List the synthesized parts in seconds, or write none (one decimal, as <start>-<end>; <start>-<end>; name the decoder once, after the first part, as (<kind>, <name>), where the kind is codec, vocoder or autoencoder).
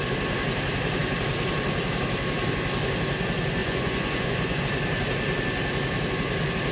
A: 3.6-4.6 (vocoder, Vocos)